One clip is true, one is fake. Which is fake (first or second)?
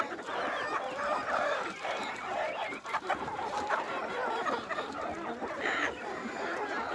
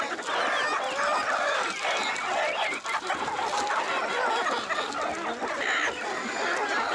first